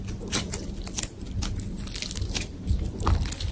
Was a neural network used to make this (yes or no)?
yes